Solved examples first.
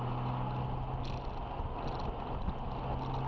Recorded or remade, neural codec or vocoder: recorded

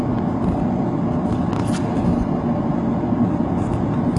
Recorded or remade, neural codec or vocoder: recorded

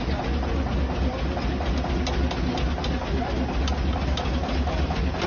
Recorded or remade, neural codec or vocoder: recorded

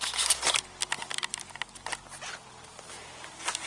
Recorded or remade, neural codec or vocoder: recorded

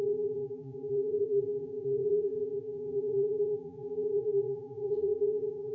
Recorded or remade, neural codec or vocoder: remade, vocoder, Vocos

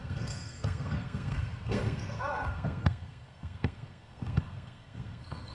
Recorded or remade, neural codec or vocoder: remade, codec, SNAC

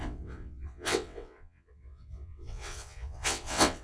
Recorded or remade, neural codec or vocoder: remade, vocoder, WaveNeXt